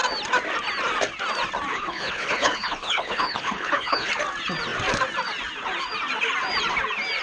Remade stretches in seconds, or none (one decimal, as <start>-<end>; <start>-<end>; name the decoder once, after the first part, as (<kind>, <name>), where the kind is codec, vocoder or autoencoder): 1.7-4.1 (codec, HILCodec)